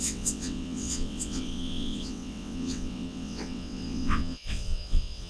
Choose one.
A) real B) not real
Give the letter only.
B